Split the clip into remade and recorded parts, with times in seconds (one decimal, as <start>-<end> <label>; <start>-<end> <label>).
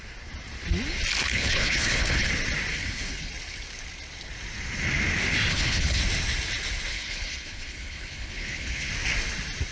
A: 0.0-1.2 recorded; 1.2-2.3 remade; 2.3-2.7 recorded; 2.7-3.3 remade; 3.3-5.5 recorded; 5.5-6.0 remade; 6.0-6.9 recorded; 6.9-8.9 remade; 8.9-9.7 recorded